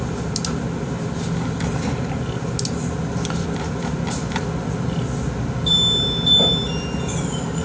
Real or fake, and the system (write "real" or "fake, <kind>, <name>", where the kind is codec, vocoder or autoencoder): real